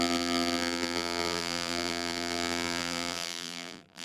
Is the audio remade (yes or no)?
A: yes